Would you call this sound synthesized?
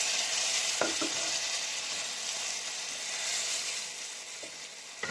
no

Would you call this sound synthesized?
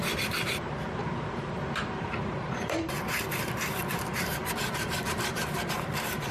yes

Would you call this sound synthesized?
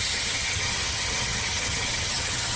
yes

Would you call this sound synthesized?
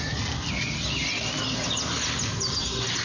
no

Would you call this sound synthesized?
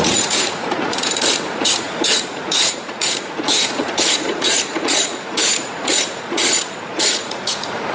yes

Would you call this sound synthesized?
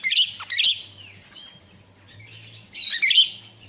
no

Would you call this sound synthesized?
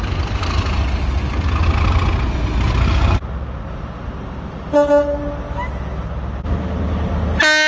no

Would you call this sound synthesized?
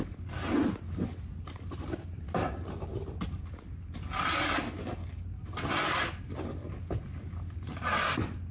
no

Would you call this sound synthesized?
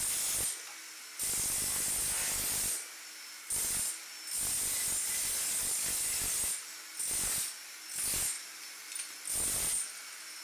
no